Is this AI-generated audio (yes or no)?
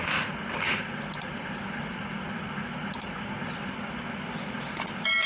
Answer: no